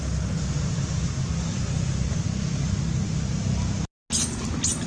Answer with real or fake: real